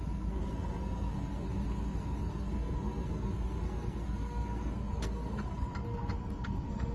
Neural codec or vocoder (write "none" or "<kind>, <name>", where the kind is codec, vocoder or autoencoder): codec, SNAC